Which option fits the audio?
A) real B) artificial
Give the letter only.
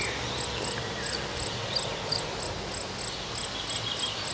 A